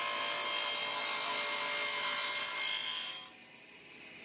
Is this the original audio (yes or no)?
yes